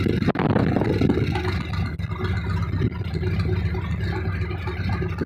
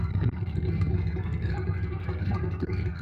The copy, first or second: second